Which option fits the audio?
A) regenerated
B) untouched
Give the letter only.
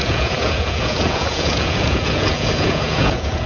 A